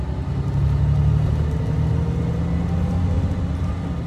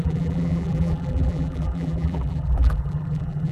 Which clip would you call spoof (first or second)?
second